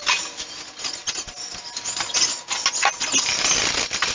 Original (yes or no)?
yes